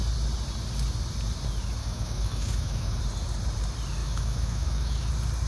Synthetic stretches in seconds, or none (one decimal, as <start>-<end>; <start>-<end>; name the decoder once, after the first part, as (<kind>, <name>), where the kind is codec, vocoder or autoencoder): 1.8-3.0 (autoencoder, DAC-VAE); 4.0-5.1